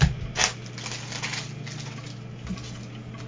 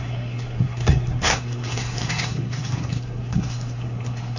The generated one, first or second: second